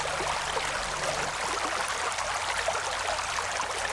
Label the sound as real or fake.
real